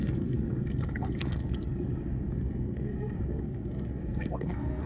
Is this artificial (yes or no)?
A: yes